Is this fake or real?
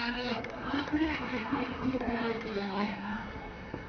fake